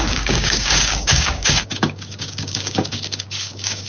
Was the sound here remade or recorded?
remade